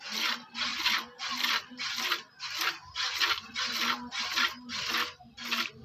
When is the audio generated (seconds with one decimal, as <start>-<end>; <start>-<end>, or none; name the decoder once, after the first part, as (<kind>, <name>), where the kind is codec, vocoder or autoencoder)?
none